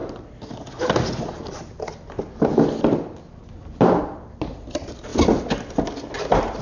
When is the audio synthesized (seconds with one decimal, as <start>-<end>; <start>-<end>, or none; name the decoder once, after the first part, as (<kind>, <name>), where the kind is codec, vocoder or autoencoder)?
none